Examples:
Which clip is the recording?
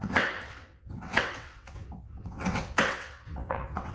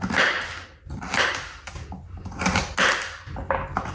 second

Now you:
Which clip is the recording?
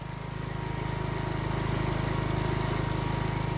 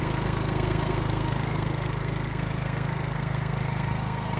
first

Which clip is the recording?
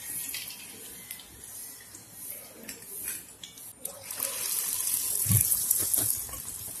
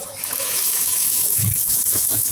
first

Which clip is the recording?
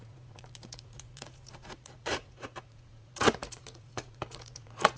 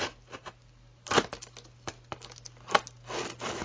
second